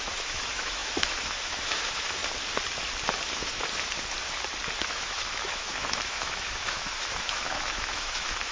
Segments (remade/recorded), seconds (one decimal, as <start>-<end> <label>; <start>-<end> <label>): 0.0-2.2 remade; 2.2-4.8 recorded; 4.8-8.5 remade

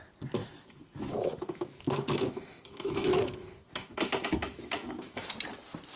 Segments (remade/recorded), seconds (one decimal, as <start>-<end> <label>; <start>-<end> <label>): 0.0-0.4 recorded; 0.4-4.0 remade; 4.0-4.4 recorded; 4.4-5.3 remade; 5.3-6.0 recorded

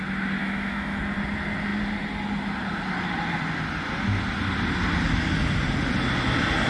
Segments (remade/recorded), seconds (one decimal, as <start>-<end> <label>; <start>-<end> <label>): 0.0-0.4 recorded; 0.4-1.0 remade; 1.0-6.7 recorded